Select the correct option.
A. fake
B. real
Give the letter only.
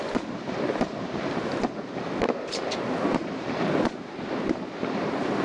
A